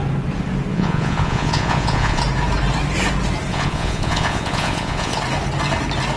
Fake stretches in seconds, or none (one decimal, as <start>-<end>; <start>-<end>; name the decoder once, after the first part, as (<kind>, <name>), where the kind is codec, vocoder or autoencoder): 0.7-2.2 (vocoder, Vocos); 3.5-5.2